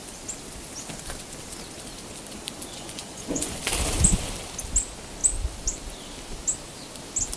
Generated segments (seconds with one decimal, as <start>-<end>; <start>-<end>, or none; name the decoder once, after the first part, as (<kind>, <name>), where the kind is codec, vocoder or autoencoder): 2.7-3.6 (vocoder, Vocos)